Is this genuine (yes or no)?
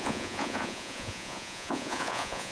no